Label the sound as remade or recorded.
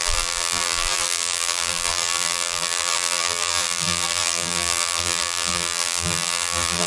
remade